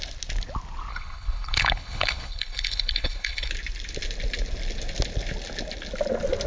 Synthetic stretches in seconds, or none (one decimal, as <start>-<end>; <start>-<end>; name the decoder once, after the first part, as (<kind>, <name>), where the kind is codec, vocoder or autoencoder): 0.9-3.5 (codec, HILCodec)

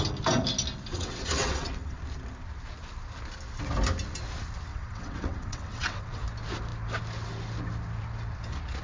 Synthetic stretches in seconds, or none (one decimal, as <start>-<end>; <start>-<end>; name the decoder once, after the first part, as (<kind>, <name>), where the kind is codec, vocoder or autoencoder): 0.9-2.0 (vocoder, WaveNeXt); 4.7-6.2

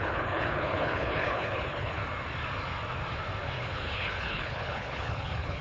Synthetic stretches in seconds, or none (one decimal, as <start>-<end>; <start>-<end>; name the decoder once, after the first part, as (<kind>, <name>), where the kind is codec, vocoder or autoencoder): 0.0-2.0 (codec, HILCodec); 3.6-5.6